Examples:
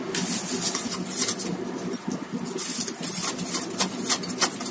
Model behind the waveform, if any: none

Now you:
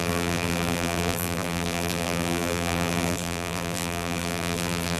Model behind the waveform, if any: vocoder, BigVGAN v2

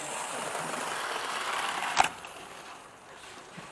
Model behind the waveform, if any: vocoder, BigVGAN v2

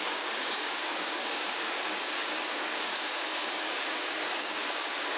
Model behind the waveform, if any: codec, DAC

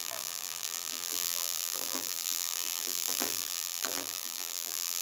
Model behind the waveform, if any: vocoder, BigVGAN v2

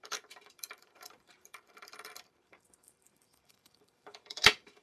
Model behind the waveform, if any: vocoder, BigVGAN v2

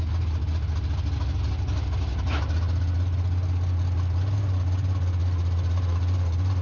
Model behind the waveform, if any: none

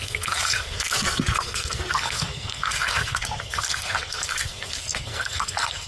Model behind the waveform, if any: codec, SNAC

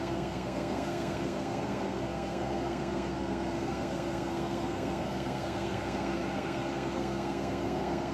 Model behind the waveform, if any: codec, SNAC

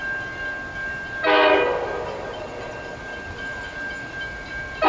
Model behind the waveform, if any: none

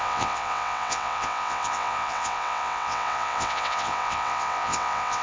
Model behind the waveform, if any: vocoder, WaveNeXt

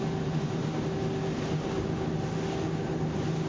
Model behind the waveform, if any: none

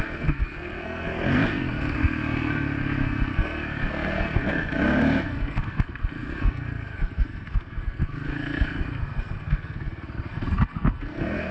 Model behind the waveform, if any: codec, SNAC